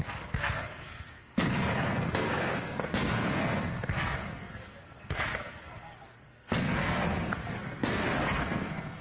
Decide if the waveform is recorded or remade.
remade